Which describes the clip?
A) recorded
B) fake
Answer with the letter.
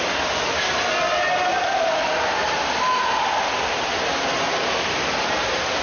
A